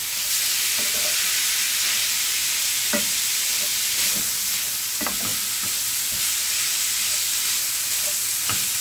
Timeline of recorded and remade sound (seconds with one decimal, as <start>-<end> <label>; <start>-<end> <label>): 0.0-2.4 recorded; 2.4-3.9 remade; 3.9-8.8 recorded